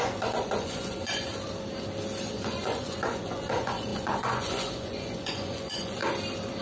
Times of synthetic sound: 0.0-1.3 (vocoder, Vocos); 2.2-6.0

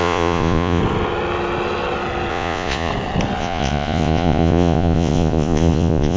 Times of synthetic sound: 0.0-0.8 (vocoder, Vocos); 2.3-2.9; 3.4-6.2

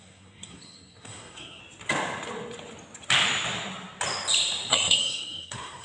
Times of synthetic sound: 0.0-1.6 (codec, SNAC); 4.7-5.8